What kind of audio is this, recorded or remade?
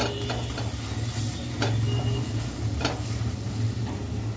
recorded